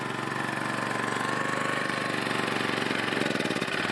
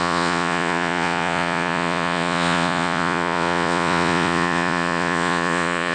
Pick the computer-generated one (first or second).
second